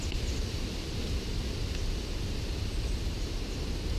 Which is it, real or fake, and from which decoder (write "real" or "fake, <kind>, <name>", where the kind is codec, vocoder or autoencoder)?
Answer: real